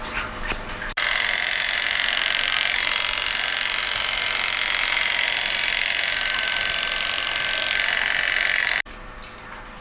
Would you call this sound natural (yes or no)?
yes